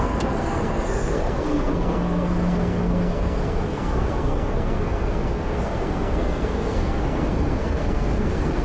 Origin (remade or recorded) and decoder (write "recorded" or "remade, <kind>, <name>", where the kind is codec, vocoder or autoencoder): remade, codec, SNAC